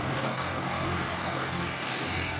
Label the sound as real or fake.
fake